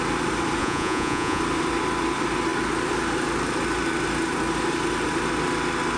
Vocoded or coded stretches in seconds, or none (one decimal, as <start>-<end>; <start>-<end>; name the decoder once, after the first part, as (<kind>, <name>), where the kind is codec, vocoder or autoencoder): 0.6-1.4 (vocoder, Vocos)

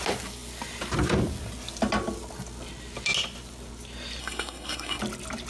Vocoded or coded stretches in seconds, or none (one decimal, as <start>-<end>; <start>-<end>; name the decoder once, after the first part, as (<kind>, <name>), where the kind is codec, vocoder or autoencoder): 4.2-5.0 (codec, SNAC)

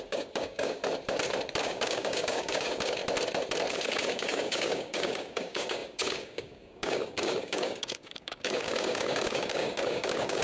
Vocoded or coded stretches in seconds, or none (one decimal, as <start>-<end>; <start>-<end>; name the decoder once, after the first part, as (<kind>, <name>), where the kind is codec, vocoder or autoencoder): 0.0-0.8 (codec, DAC); 1.6-3.0; 3.7-10.4

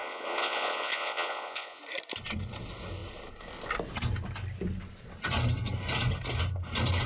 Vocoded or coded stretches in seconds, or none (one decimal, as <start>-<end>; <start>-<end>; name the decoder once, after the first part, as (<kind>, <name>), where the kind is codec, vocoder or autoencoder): 0.0-1.8 (vocoder, Vocos)

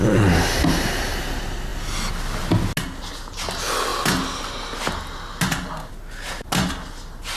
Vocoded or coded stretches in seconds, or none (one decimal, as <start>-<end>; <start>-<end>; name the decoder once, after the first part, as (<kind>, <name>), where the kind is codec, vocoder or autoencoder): none

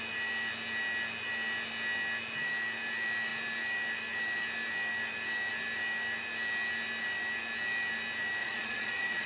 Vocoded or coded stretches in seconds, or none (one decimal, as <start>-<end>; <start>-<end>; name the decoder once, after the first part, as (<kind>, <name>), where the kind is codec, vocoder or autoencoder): 8.4-9.3 (vocoder, Vocos)

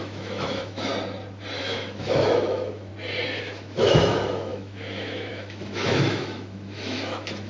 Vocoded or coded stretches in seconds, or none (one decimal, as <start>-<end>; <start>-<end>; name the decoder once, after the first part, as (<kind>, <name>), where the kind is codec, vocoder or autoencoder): 0.0-0.9 (autoencoder, DAC-VAE); 1.6-2.9; 3.4-7.5

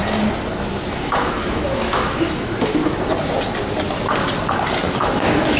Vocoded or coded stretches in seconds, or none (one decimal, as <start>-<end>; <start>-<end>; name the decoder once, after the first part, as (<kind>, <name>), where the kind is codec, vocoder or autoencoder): 0.9-2.8 (autoencoder, DAC-VAE); 4.9-5.6